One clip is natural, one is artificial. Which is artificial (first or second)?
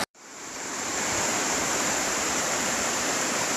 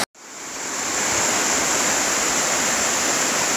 first